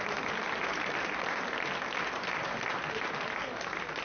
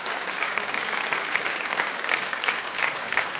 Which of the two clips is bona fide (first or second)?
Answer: first